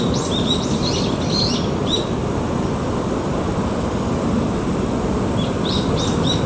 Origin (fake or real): real